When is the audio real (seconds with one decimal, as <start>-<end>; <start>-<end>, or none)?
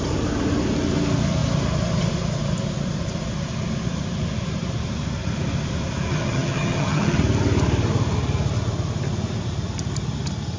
0.0-6.1; 7.2-10.6